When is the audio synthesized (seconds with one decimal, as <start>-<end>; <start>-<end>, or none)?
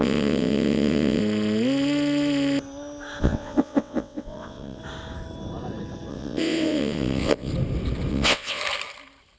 0.0-1.2; 3.2-4.8; 6.1-7.5; 8.1-8.6